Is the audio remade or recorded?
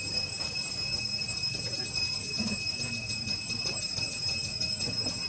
recorded